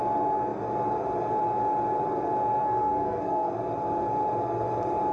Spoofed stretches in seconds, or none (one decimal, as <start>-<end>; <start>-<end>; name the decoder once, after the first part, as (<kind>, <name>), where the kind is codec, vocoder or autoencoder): 2.6-3.5 (codec, SNAC)